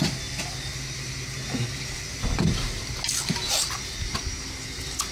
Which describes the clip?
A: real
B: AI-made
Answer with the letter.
A